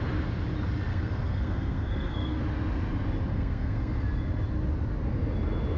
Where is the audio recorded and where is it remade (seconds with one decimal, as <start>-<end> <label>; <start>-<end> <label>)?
0.0-0.9 recorded; 0.9-2.4 remade; 2.4-3.3 recorded; 3.3-3.9 remade; 3.9-5.8 recorded